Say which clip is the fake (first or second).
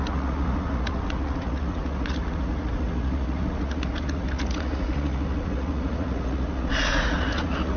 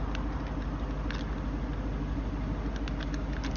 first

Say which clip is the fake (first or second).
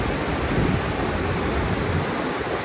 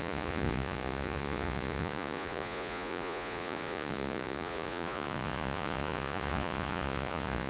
second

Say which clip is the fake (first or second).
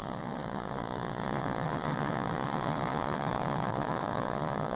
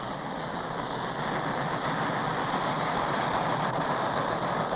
first